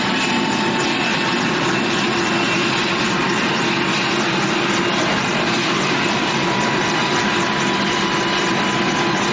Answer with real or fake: real